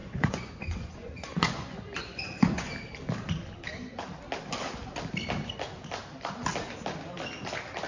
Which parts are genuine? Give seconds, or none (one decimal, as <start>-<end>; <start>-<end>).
2.7-7.9